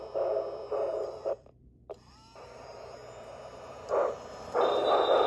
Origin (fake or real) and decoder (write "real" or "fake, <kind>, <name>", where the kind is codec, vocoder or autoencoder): fake, vocoder, BigVGAN v2